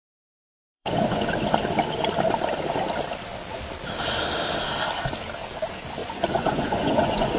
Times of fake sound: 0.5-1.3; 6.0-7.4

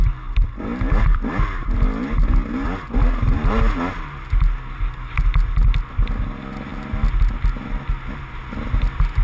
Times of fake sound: none

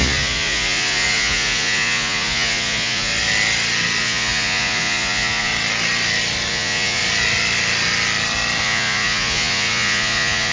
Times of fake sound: 0.0-3.1; 4.0-5.5; 6.5-7.0; 8.6-10.5

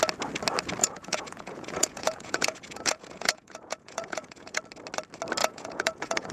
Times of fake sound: 0.8-4.6; 5.4-6.3

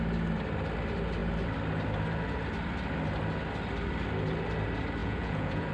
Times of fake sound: 5.0-5.7

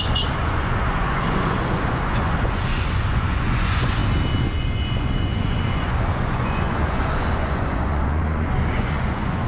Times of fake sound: 0.0-4.0; 4.6-9.5